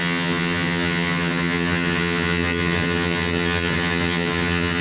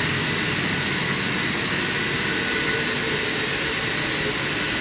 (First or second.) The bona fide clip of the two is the second